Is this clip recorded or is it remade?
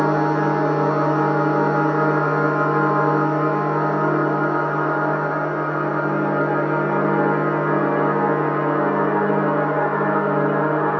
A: recorded